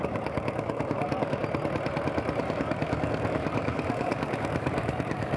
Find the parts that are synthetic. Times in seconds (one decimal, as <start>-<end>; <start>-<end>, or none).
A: 0.0-1.4; 2.4-5.4